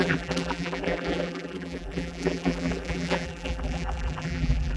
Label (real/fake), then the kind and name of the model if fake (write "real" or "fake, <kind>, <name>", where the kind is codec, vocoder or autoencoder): fake, vocoder, BigVGAN v2